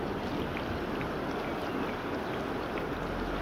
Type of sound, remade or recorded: recorded